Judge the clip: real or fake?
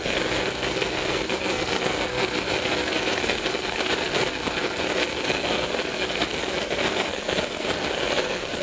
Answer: fake